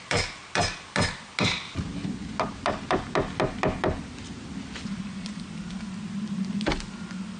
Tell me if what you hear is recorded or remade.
recorded